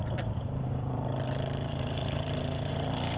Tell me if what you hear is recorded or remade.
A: remade